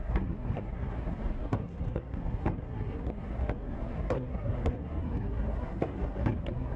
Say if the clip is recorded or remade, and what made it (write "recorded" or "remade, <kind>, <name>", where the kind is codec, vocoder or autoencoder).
remade, codec, SNAC